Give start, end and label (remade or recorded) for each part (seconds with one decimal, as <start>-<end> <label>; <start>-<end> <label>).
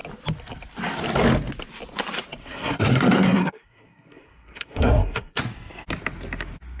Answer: 0.0-2.4 recorded; 2.4-5.4 remade; 5.4-6.8 recorded